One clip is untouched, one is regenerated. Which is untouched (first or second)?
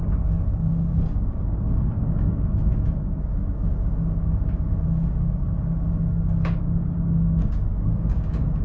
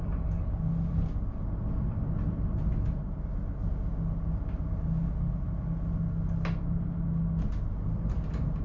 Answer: second